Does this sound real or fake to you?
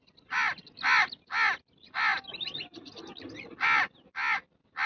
real